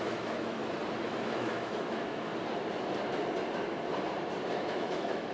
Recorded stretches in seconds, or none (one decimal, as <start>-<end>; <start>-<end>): 0.6-1.2; 2.3-4.5